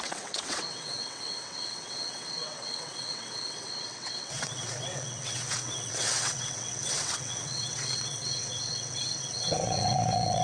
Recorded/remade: remade